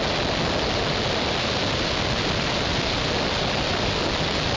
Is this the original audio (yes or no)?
yes